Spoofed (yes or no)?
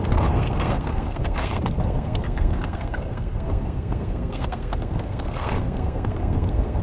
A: yes